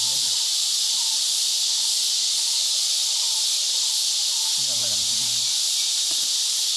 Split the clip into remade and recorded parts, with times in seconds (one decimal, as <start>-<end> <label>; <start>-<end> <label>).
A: 0.0-6.8 recorded